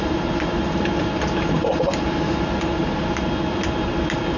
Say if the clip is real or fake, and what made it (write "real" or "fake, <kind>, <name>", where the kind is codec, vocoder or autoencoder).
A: real